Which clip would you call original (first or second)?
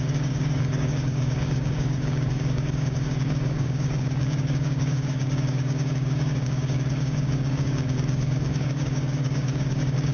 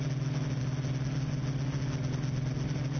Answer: second